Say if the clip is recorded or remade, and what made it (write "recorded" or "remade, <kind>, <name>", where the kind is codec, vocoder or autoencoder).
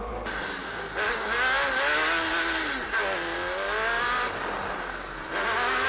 recorded